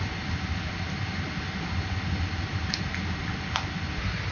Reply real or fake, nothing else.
real